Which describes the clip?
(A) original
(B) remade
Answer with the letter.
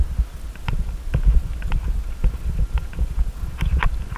A